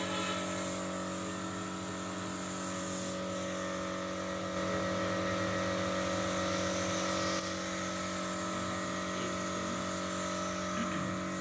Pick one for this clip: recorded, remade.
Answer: recorded